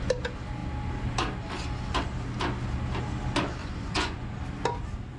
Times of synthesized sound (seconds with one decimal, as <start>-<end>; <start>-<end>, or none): 3.6-4.3